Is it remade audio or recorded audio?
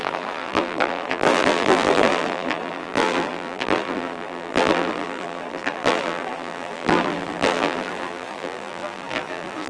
remade